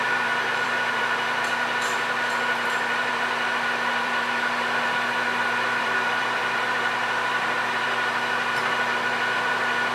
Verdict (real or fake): fake